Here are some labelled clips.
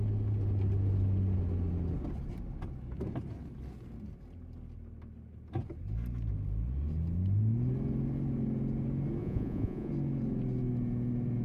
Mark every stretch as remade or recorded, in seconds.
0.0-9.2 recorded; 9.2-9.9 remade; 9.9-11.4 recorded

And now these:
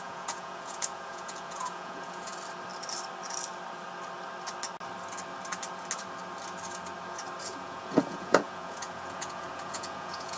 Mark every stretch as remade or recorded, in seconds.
0.0-2.3 remade; 2.3-7.4 recorded; 7.4-10.4 remade

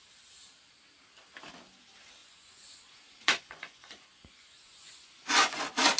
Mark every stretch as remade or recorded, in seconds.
0.0-2.2 recorded; 2.2-5.6 remade; 5.6-6.0 recorded